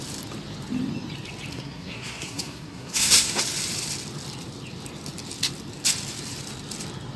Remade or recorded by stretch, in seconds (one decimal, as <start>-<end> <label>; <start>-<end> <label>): 0.0-1.5 recorded; 1.5-3.4 remade; 3.4-7.2 recorded